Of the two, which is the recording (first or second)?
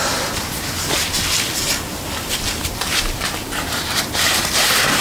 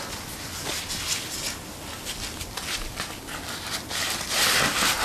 second